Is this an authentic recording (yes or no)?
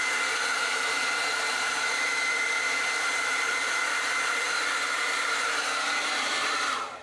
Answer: yes